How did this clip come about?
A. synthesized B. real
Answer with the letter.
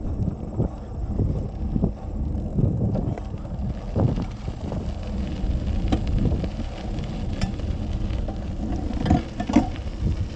B